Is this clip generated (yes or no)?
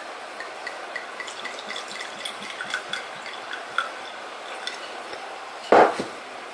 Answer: no